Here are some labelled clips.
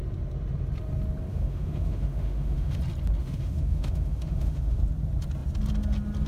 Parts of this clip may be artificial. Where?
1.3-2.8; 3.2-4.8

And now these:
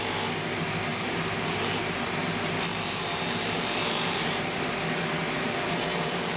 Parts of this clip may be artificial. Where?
0.9-2.1; 2.7-6.4